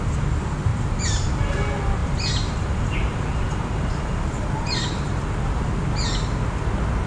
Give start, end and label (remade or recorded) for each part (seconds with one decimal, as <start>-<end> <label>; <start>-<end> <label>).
0.0-0.7 recorded; 0.7-1.3 remade; 1.3-2.0 recorded; 2.0-5.7 remade; 5.7-7.1 recorded